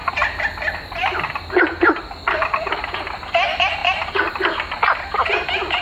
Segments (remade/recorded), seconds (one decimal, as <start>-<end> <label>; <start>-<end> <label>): 0.0-5.8 recorded